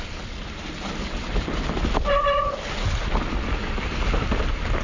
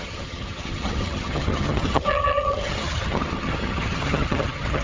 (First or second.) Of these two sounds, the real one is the first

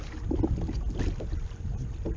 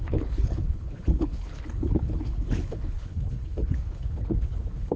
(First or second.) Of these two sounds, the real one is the first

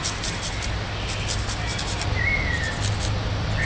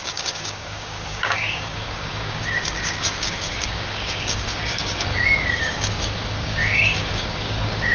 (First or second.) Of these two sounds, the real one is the first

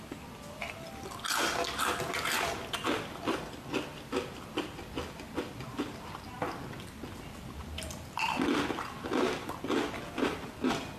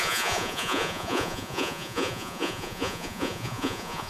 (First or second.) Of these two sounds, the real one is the first